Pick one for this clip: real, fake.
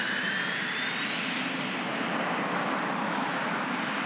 real